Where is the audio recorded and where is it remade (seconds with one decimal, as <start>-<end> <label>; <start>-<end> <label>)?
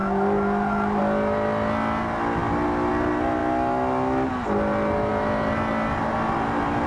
0.0-6.9 recorded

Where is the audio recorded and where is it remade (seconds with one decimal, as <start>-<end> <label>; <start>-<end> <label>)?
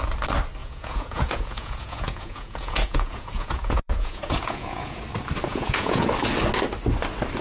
0.0-0.6 recorded; 0.6-5.0 remade; 5.0-5.5 recorded; 5.5-6.1 remade; 6.1-7.4 recorded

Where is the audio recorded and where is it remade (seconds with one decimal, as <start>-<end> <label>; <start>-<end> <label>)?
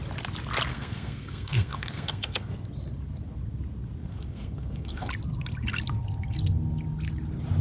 0.0-0.7 recorded; 0.7-2.7 remade; 2.7-4.0 recorded; 4.0-5.1 remade; 5.1-7.6 recorded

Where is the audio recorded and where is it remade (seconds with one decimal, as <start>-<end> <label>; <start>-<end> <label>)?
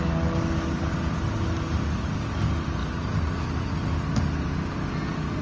0.0-5.4 recorded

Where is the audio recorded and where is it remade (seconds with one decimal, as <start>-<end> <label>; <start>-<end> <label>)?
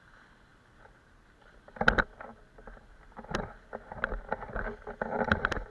0.0-5.7 recorded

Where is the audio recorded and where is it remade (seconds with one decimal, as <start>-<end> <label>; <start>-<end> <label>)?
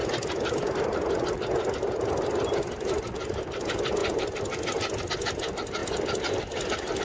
0.0-7.0 recorded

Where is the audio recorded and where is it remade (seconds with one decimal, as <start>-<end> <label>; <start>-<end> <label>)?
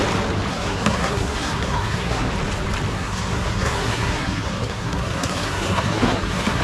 0.0-0.5 recorded; 0.5-2.3 remade; 2.3-2.9 recorded; 2.9-6.6 remade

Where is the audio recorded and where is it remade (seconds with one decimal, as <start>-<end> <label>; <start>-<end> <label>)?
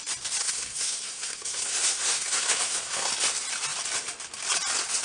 0.0-0.4 recorded; 0.4-3.1 remade; 3.1-5.0 recorded